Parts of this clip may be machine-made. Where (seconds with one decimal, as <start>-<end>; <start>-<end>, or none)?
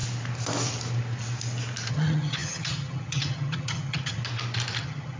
1.9-4.2; 4.8-5.2